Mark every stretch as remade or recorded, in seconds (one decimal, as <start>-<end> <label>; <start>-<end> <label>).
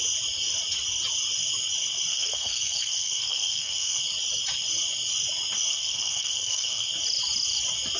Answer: 0.0-2.1 recorded; 2.1-4.0 remade; 4.0-5.7 recorded; 5.7-6.9 remade; 6.9-8.0 recorded